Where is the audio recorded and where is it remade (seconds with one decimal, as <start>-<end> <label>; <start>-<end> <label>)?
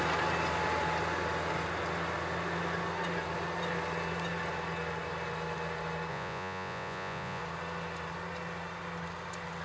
0.0-6.1 recorded; 6.1-7.4 remade; 7.4-9.6 recorded